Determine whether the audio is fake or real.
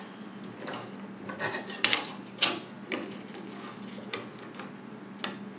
real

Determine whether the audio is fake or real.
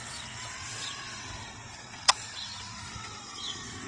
fake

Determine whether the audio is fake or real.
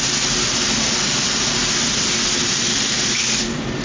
real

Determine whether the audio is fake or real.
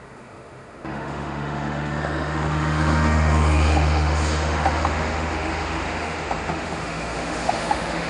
fake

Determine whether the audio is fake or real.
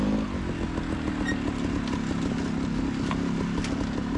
real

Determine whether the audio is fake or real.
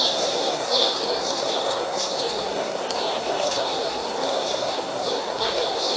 fake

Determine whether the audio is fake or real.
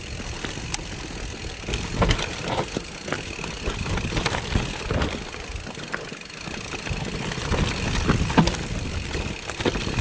real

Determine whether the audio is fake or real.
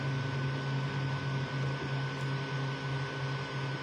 real